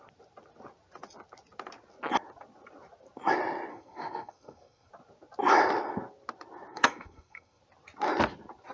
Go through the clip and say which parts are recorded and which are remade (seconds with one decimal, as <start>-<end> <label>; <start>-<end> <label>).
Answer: 0.0-3.7 recorded; 3.7-4.9 remade; 4.9-6.7 recorded; 6.7-7.6 remade; 7.6-8.7 recorded